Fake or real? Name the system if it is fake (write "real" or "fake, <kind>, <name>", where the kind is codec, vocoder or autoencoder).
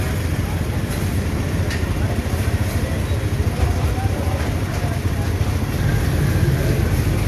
real